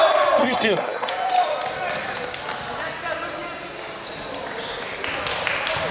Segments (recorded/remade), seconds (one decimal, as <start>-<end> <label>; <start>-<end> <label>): 0.0-0.4 recorded; 0.4-1.1 remade; 1.1-5.9 recorded

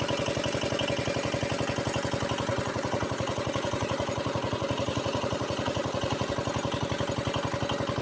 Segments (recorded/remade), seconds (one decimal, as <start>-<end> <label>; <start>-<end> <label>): 0.0-2.5 recorded; 2.5-6.3 remade; 6.3-8.0 recorded

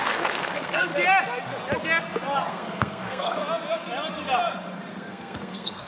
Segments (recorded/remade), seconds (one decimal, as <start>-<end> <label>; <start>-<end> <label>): 0.0-0.9 remade; 0.9-2.5 recorded; 2.5-3.4 remade; 3.4-4.9 recorded; 4.9-5.9 remade

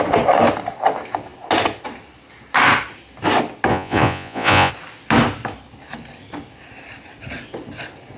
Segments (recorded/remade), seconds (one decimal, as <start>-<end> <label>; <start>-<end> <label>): 0.0-3.7 recorded; 3.7-4.7 remade; 4.7-8.2 recorded